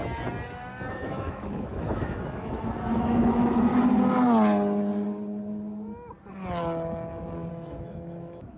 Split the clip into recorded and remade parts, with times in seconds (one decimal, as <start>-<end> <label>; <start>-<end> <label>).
0.0-0.9 recorded; 0.9-3.7 remade; 3.7-7.5 recorded; 7.5-8.6 remade